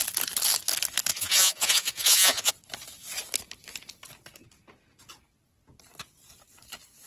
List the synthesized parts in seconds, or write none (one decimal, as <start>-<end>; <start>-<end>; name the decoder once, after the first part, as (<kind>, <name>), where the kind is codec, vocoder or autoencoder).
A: 1.1-2.5 (vocoder, Vocos)